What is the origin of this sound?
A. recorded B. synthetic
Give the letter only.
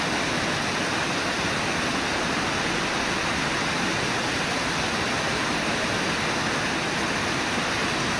A